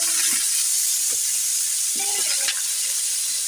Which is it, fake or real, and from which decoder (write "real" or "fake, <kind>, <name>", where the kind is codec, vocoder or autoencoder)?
real